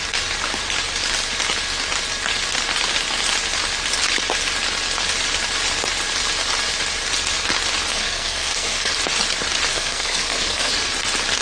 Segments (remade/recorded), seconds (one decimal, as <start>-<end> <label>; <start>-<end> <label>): 0.0-7.9 recorded; 7.9-8.9 remade; 8.9-9.7 recorded; 9.7-10.7 remade; 10.7-11.4 recorded